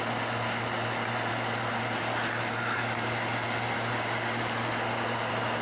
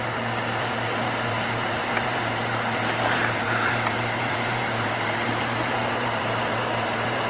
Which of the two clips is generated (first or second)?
second